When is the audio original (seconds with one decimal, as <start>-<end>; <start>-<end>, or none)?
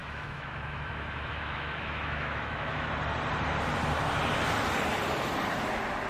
2.9-6.1